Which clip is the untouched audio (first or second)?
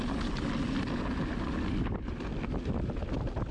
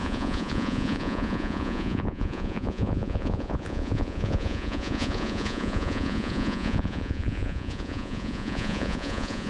first